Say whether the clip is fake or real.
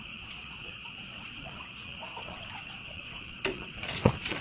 fake